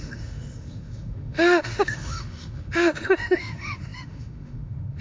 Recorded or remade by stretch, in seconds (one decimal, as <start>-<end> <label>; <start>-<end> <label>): 0.0-5.0 remade